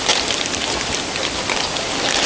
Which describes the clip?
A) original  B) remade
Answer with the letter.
A